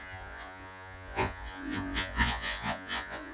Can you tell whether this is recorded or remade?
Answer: remade